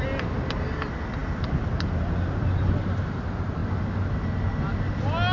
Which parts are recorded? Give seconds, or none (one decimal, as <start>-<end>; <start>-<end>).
0.0-5.3